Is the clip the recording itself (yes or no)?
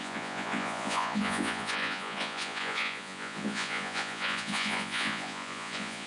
no